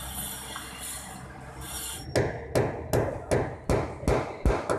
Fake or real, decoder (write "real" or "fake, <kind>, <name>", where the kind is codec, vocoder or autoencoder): real